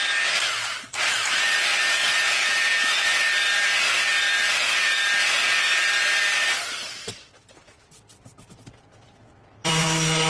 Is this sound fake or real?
fake